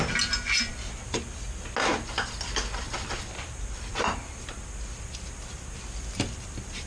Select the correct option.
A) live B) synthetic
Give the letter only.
A